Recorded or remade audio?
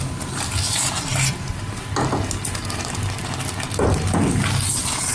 recorded